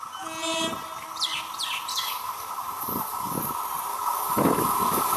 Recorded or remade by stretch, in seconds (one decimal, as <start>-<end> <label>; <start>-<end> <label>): 0.0-1.9 recorded; 1.9-3.4 remade; 3.4-3.9 recorded; 3.9-5.2 remade